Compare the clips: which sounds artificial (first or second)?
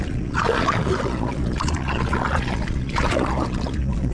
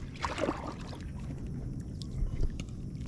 first